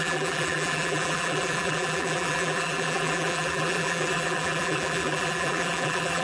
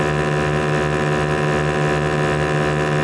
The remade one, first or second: first